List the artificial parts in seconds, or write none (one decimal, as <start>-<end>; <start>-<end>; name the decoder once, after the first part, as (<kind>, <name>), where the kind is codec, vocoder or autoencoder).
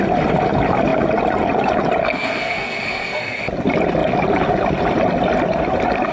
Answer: 2.0-3.4 (codec, SNAC)